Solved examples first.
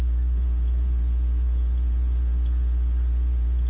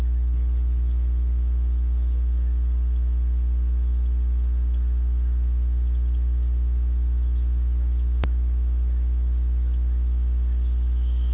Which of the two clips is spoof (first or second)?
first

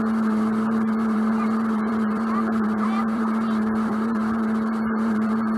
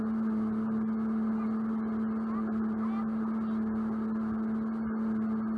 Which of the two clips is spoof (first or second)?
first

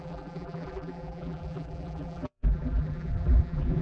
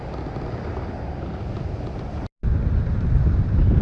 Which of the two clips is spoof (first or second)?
first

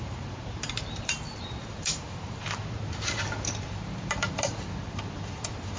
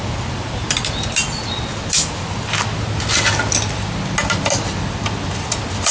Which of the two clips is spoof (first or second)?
first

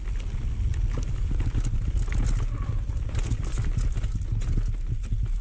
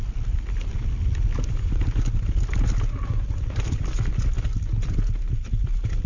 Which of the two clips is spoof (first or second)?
second